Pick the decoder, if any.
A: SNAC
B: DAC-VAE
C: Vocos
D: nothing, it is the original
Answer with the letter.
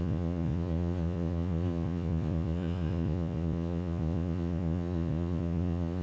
C